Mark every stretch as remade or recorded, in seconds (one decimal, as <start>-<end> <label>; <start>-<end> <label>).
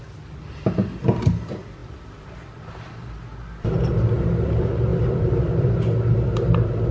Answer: 0.0-4.9 recorded; 4.9-5.8 remade; 5.8-6.9 recorded